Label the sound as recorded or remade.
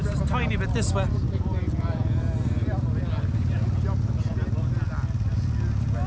recorded